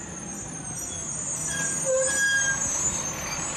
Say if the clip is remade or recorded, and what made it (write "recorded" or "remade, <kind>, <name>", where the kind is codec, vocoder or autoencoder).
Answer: recorded